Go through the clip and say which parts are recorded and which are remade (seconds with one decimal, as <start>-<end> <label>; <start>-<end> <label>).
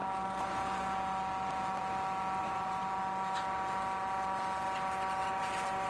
0.0-2.4 recorded; 2.4-3.0 remade; 3.0-5.2 recorded; 5.2-5.9 remade